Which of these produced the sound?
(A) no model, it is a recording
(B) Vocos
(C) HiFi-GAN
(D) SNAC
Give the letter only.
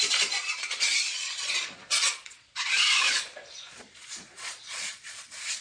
B